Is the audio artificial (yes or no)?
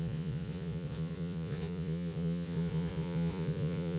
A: yes